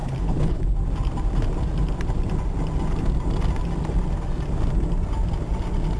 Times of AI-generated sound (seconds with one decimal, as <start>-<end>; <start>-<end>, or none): 0.0-0.6